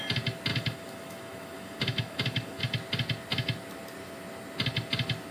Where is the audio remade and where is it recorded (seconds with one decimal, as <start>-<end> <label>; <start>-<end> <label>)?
0.0-0.5 recorded; 0.5-2.6 remade; 2.6-5.3 recorded

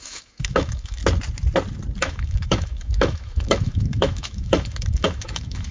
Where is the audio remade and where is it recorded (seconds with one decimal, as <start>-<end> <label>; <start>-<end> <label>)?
0.0-1.0 remade; 1.0-2.0 recorded; 2.0-5.7 remade

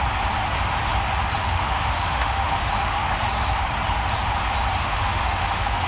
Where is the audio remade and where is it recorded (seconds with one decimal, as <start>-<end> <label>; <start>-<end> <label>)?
0.0-1.4 recorded; 1.4-3.1 remade; 3.1-4.8 recorded; 4.8-5.9 remade

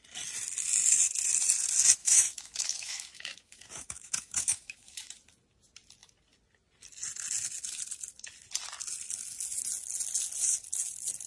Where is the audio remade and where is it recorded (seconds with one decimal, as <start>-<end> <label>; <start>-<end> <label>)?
0.0-2.0 recorded; 2.0-5.1 remade; 5.1-11.3 recorded

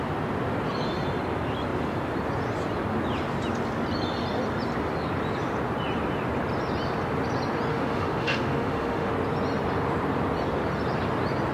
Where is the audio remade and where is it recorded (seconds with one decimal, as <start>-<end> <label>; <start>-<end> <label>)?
0.0-7.7 recorded; 7.7-9.1 remade; 9.1-11.5 recorded

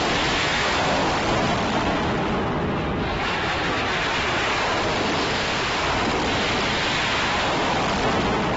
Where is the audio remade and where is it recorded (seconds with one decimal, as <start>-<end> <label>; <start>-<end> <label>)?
0.0-1.0 remade; 1.0-3.2 recorded; 3.2-3.6 remade; 3.6-8.6 recorded

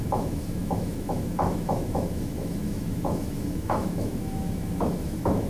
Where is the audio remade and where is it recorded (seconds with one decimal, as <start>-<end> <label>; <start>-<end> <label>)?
0.0-5.5 remade

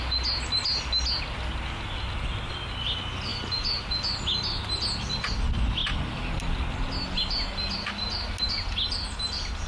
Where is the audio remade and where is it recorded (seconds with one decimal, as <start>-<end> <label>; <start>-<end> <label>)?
0.0-9.7 recorded